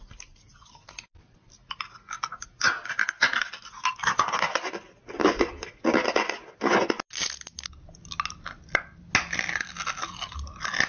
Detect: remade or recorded recorded